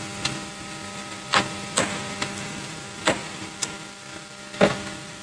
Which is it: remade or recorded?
recorded